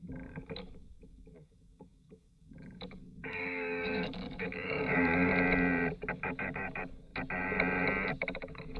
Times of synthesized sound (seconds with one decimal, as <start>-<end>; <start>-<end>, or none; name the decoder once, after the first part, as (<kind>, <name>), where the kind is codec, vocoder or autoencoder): 0.0-5.3 (codec, DAC); 6.1-7.1; 8.1-8.8